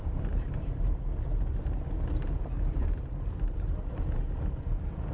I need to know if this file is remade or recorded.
recorded